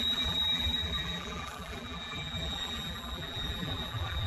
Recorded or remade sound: remade